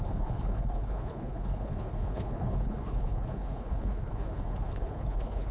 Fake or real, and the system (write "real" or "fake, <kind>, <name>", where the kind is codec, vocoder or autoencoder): fake, codec, HILCodec